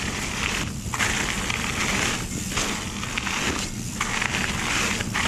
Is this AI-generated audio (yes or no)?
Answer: no